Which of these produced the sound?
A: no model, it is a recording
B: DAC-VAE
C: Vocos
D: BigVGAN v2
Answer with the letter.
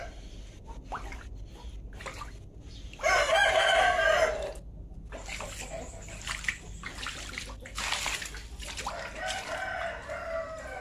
A